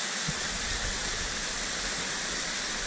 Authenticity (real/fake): real